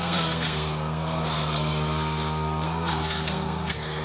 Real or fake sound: fake